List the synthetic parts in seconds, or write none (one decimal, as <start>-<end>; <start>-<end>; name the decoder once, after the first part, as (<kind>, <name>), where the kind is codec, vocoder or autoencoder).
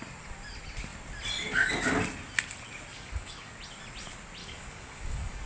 2.9-3.5 (codec, DAC); 4.4-5.5